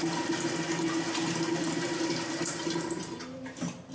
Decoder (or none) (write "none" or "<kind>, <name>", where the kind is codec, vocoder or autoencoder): none